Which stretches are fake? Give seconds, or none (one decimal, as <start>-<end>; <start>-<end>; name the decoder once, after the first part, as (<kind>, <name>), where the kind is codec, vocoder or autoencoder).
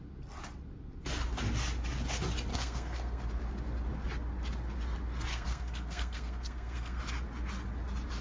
2.5-3.3 (codec, SNAC); 5.3-7.0